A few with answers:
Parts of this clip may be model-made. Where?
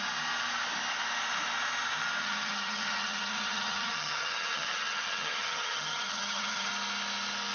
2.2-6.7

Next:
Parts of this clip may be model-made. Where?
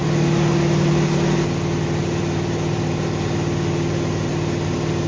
none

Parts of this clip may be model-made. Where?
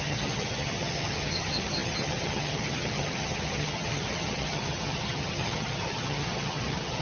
0.0-7.0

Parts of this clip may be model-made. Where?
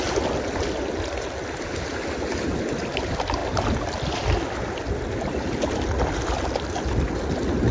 none